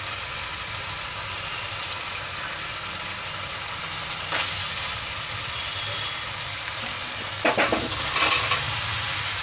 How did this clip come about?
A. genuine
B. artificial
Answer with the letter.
A